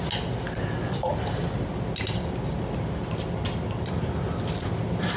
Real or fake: real